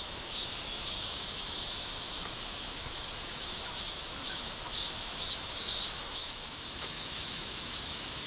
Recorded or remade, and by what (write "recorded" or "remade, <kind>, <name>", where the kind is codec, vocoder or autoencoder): remade, autoencoder, DAC-VAE